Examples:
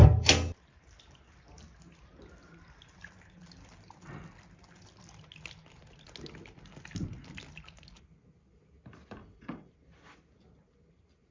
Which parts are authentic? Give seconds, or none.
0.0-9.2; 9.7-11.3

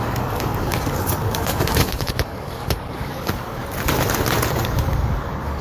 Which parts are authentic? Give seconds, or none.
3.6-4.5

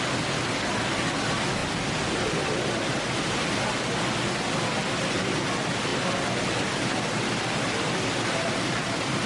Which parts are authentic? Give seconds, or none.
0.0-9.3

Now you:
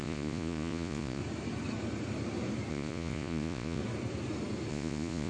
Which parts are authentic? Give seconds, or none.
1.2-2.7; 3.8-4.7

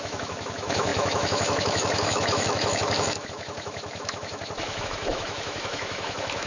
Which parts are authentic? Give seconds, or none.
none

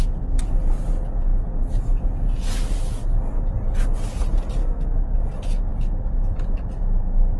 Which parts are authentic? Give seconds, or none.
0.0-4.6; 5.2-7.4

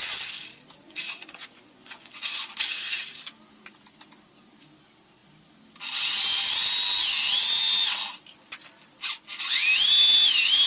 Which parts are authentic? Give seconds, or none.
0.0-0.8; 2.5-10.7

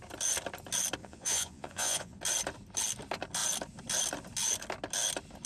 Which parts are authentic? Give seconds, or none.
0.0-1.0; 2.2-5.5